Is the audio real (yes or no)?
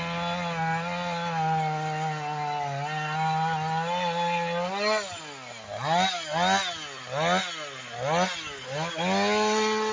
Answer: yes